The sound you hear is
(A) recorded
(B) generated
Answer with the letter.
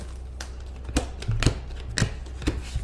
A